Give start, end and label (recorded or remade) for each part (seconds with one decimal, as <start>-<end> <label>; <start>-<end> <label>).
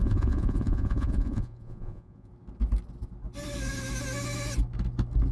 0.0-2.3 remade; 2.3-5.3 recorded